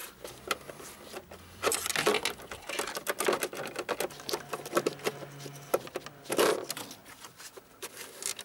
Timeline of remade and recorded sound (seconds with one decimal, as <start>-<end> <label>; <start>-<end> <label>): 0.0-8.4 recorded

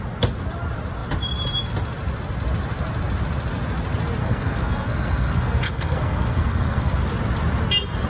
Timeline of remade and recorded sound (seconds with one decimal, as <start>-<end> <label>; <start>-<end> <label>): 0.0-4.2 recorded; 4.2-7.0 remade; 7.0-8.1 recorded

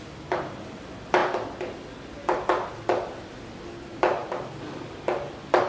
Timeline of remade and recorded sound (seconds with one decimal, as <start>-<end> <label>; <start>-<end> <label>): 0.0-5.7 recorded

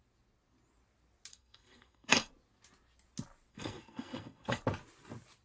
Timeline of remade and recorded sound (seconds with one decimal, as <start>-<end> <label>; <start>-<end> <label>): 0.0-1.3 recorded; 1.3-2.3 remade; 2.3-3.5 recorded; 3.5-4.6 remade; 4.6-5.4 recorded

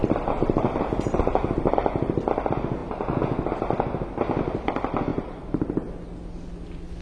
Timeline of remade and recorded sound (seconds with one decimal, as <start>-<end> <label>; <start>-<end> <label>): 0.0-1.7 remade; 1.7-5.1 recorded; 5.1-5.7 remade; 5.7-7.0 recorded